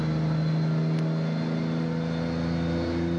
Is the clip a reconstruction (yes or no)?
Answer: no